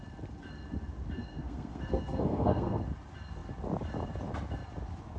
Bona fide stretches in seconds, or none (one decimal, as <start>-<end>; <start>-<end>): 0.0-1.2; 2.8-5.2